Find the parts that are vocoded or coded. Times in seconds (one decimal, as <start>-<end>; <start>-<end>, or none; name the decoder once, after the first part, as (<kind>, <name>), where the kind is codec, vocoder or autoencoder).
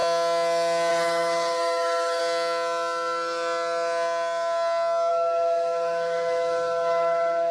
0.9-2.2 (codec, SNAC); 5.1-7.5